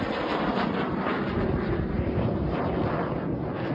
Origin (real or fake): fake